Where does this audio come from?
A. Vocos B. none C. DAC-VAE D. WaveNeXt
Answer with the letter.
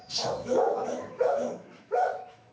C